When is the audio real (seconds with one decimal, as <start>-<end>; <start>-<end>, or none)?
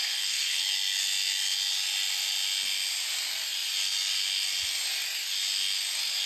0.6-6.3